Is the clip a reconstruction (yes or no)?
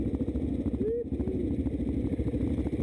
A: no